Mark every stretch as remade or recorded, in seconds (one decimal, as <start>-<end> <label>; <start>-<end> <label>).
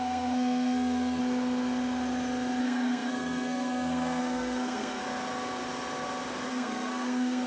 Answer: 0.0-1.2 remade; 1.2-2.6 recorded; 2.6-5.0 remade; 5.0-6.5 recorded; 6.5-7.5 remade